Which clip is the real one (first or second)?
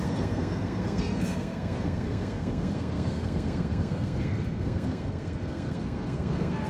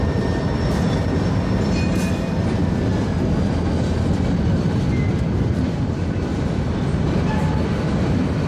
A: second